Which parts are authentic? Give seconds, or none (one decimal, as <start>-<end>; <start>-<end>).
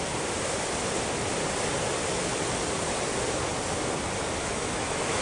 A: 0.0-4.4